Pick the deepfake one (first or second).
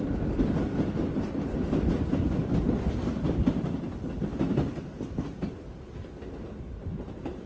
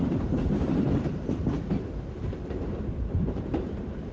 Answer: second